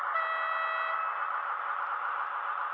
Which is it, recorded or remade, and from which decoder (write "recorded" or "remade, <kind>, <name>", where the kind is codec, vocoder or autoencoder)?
recorded